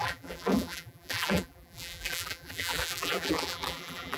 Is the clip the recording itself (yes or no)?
no